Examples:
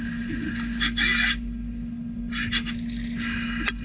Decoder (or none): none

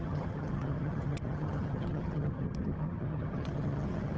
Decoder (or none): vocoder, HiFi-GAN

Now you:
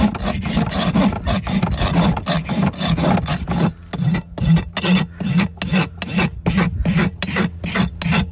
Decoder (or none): none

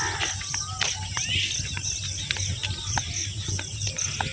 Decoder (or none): none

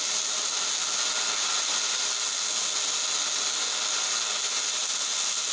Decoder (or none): none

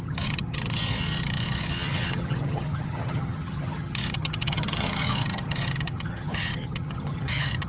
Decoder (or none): vocoder, HiFi-GAN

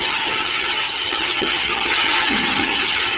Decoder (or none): vocoder, HiFi-GAN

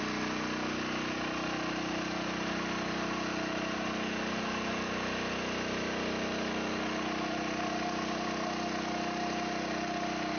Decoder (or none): none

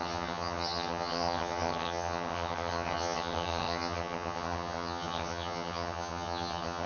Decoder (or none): vocoder, HiFi-GAN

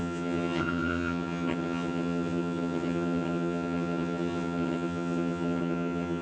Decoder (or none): vocoder, HiFi-GAN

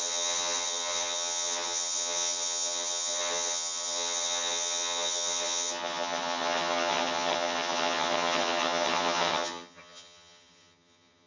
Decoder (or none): vocoder, HiFi-GAN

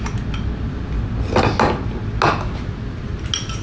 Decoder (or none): none